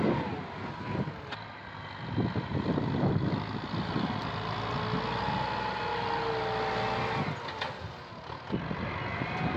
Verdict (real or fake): real